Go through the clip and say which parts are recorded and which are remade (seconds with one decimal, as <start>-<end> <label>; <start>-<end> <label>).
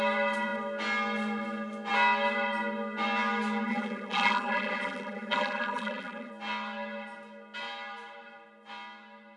0.0-3.7 recorded; 3.7-6.3 remade; 6.3-9.4 recorded